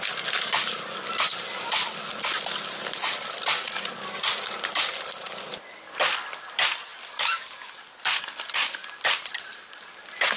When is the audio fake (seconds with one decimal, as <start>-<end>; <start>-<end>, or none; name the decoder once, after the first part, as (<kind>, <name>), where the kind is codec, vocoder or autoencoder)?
none